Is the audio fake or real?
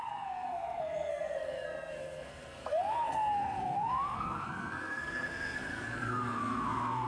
fake